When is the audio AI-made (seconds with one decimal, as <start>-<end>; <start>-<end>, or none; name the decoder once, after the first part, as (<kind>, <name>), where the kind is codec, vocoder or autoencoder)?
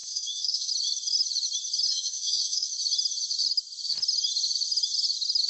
0.0-0.7 (autoencoder, DAC-VAE); 1.9-2.7